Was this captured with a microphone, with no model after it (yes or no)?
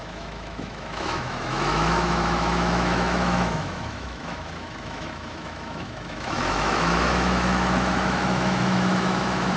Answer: no